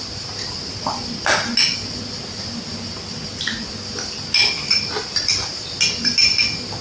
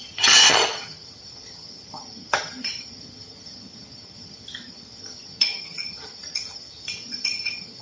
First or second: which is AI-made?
second